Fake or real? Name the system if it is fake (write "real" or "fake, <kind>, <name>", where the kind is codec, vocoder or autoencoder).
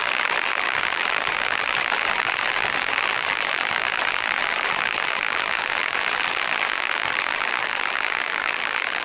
fake, vocoder, BigVGAN v2